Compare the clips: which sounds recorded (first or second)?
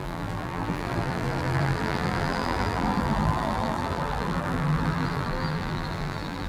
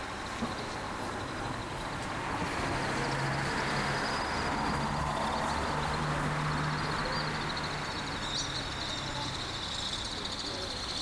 second